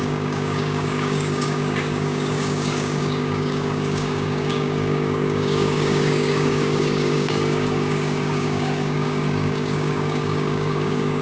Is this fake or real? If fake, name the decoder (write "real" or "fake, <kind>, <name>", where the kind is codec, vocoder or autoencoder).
fake, codec, DAC